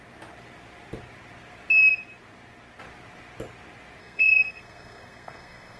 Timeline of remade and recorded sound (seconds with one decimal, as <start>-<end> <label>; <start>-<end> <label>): 0.0-4.0 recorded; 4.0-5.8 remade